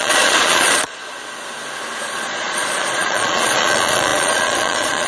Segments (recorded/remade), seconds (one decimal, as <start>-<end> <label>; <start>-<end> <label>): 0.0-1.0 remade; 1.0-2.0 recorded; 2.0-5.1 remade